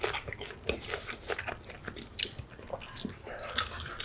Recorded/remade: recorded